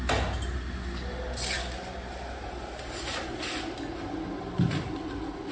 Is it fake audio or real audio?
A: real